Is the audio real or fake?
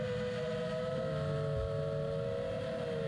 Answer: real